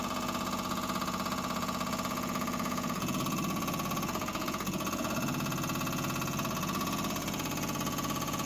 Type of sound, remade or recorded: remade